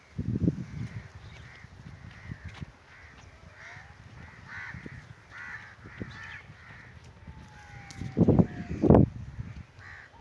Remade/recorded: recorded